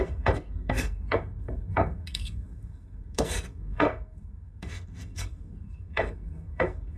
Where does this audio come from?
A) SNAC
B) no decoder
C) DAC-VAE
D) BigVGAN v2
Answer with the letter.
A